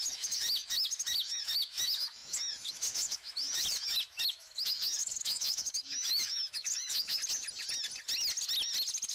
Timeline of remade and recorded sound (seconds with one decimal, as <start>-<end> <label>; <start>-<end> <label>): 0.0-7.2 remade; 7.2-9.1 recorded